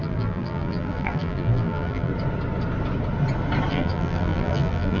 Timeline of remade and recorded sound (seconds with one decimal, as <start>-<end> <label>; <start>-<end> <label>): 0.0-2.1 remade; 2.1-3.7 recorded; 3.7-5.0 remade